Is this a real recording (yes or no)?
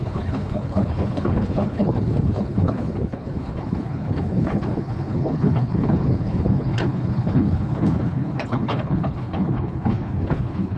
no